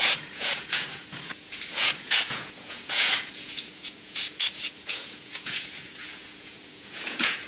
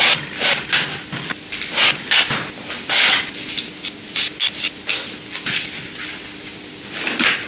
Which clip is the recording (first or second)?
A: second